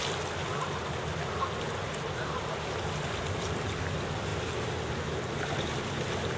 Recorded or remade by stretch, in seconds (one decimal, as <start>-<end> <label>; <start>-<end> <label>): 0.0-6.4 recorded